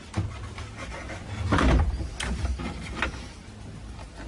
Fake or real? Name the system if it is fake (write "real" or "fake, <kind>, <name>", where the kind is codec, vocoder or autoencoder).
real